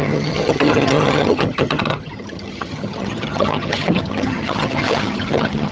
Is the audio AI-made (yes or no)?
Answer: yes